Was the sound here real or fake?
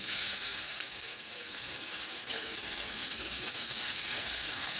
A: fake